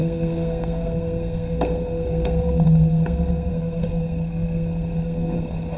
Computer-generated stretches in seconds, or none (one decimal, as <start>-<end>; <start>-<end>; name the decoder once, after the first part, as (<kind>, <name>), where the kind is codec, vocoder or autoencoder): 0.0-5.8 (codec, SNAC)